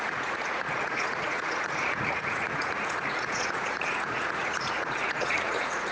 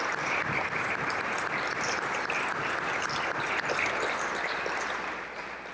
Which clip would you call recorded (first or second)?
second